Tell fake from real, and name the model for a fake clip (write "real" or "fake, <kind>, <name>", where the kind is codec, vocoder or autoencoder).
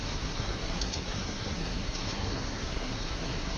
fake, codec, SNAC